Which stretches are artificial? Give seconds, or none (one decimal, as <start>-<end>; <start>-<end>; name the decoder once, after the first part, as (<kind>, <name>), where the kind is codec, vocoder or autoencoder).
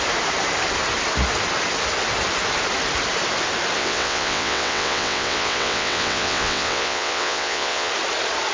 3.8-7.9 (vocoder, WaveNeXt)